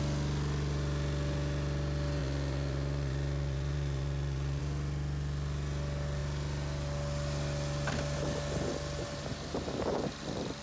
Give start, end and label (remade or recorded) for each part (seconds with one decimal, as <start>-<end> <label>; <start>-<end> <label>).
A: 0.0-2.2 recorded; 2.2-4.6 remade; 4.6-10.6 recorded